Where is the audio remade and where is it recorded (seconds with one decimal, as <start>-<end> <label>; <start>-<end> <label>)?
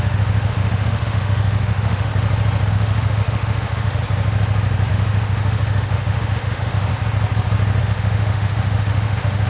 0.0-2.1 remade; 2.1-2.7 recorded; 2.7-4.0 remade; 4.0-4.9 recorded; 4.9-6.9 remade; 6.9-7.8 recorded; 7.8-9.5 remade